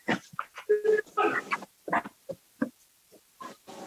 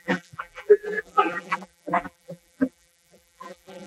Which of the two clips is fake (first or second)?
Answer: second